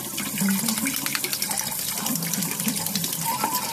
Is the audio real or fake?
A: real